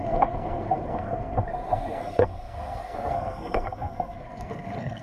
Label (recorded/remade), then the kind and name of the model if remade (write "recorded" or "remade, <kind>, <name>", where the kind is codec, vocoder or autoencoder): remade, codec, SNAC